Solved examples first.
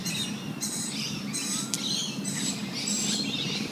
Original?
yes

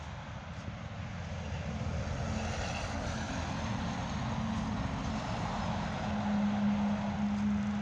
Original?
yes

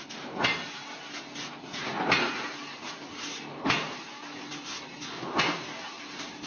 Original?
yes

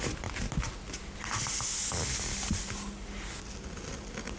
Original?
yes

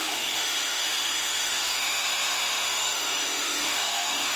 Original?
no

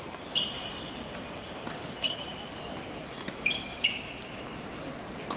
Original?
yes